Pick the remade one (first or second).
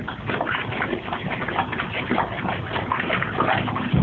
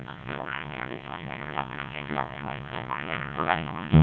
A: second